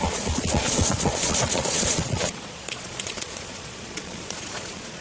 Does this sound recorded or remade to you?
remade